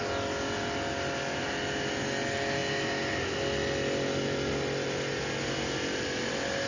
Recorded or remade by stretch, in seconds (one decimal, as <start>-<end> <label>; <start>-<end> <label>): 0.0-6.7 recorded